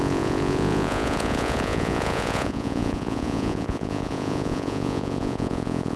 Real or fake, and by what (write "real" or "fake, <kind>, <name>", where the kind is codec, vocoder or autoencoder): fake, vocoder, Vocos